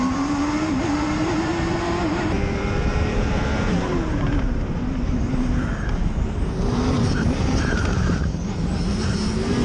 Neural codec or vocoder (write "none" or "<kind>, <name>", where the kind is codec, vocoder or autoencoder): vocoder, BigVGAN v2